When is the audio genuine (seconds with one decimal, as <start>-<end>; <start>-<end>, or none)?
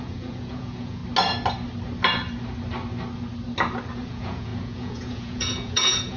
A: 1.0-3.9